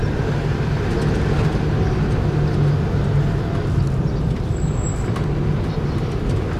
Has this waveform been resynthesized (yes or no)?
no